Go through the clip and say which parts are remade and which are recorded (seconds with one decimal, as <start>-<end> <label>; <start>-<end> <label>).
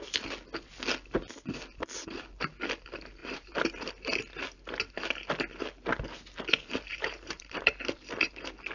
0.0-3.2 recorded; 3.2-3.9 remade; 3.9-6.9 recorded; 6.9-7.7 remade; 7.7-8.7 recorded